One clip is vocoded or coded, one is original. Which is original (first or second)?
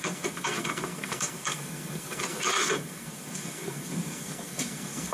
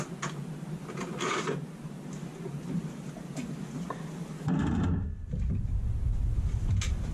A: second